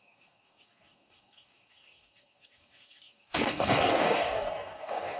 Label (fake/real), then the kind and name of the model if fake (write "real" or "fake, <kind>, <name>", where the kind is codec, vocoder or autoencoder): fake, codec, DAC